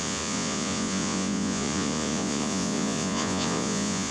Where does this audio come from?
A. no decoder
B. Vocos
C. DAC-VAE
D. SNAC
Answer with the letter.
B